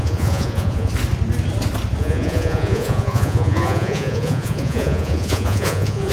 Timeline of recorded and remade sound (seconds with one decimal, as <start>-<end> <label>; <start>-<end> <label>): 0.0-0.9 remade; 0.9-2.0 recorded; 2.0-6.1 remade